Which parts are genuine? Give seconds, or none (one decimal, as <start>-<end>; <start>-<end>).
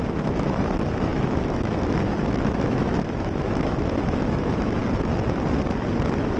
4.8-5.9